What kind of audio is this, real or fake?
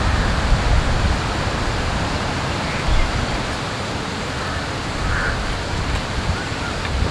fake